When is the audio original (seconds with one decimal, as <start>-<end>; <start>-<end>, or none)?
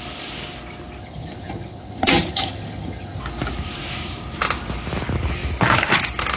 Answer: 0.0-1.0; 3.2-6.4